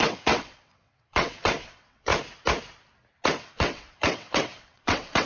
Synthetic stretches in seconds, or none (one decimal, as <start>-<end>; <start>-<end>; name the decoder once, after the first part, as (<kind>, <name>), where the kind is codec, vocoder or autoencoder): 0.0-2.1 (vocoder, WaveNeXt); 3.4-5.3